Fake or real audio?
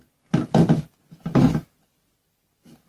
real